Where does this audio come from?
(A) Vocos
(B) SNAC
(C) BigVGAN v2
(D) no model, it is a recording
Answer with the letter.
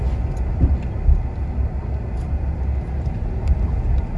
D